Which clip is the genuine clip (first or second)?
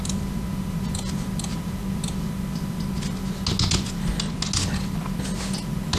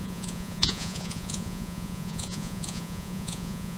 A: first